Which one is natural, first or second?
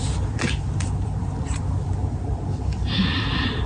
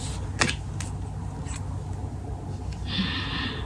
second